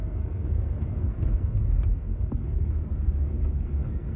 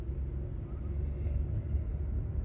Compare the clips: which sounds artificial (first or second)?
first